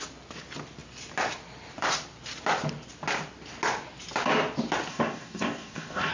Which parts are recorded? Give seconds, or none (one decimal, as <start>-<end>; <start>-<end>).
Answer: 0.0-4.9